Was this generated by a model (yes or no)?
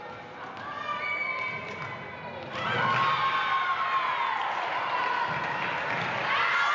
no